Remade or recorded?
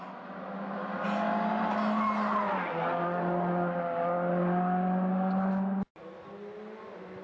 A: recorded